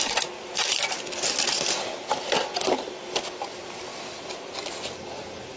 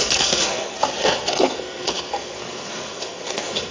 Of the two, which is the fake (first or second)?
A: second